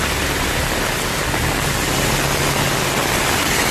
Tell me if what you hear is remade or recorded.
recorded